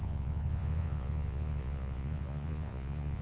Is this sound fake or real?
fake